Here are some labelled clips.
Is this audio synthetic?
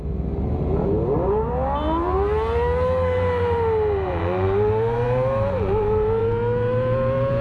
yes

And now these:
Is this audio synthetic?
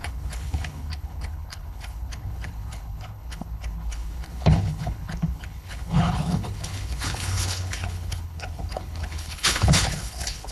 yes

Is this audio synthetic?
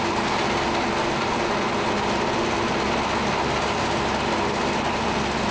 no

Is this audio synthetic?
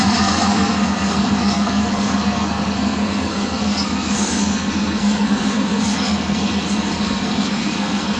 yes